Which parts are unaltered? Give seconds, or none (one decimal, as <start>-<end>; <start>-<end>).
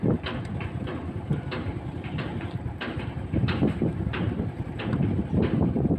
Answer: 0.0-1.7; 5.3-6.0